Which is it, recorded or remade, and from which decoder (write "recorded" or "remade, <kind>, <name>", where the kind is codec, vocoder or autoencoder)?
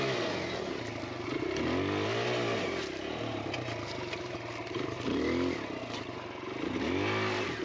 recorded